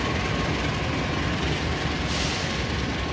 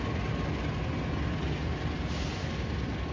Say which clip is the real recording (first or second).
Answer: second